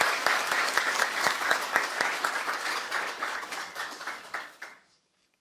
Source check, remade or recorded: remade